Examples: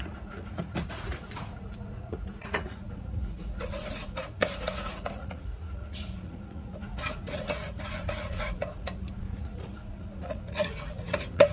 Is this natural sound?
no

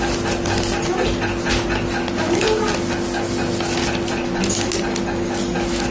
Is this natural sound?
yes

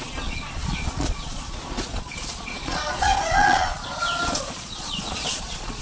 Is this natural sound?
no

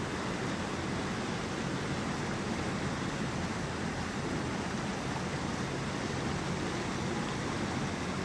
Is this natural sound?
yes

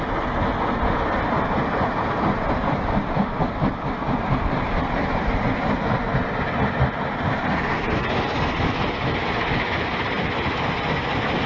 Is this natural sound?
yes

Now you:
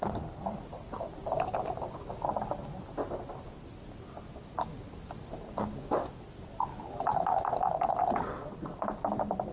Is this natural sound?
yes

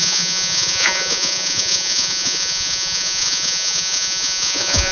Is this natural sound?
no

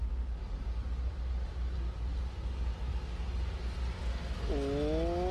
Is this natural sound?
yes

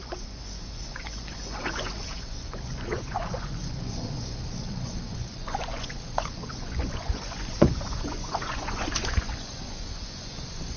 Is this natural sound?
no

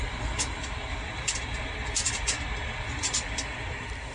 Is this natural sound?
yes